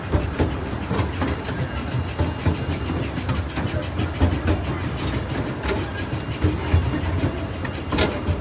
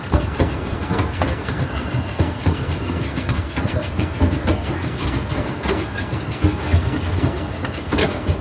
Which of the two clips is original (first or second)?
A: first